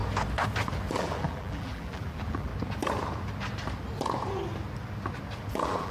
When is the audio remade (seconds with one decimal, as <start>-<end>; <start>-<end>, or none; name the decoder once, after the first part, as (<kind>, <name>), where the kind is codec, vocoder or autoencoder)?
0.9-2.5 (vocoder, BigVGAN v2); 5.5-5.9